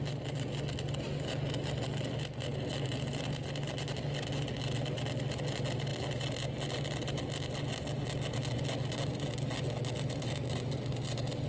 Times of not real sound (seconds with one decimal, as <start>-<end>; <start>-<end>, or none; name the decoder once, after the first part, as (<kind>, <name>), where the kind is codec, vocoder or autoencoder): 2.5-3.4 (vocoder, BigVGAN v2)